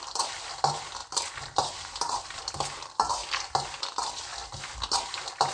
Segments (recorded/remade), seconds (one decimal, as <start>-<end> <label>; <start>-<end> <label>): 0.0-4.3 remade; 4.3-5.0 recorded; 5.0-5.5 remade